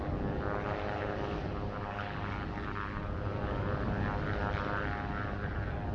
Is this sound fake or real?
real